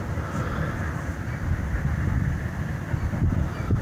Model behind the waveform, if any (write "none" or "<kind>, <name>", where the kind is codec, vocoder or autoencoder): none